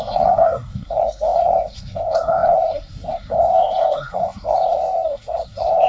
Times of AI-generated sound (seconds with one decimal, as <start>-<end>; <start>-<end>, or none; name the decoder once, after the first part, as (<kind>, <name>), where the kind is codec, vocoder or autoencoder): 0.0-5.9 (codec, SNAC)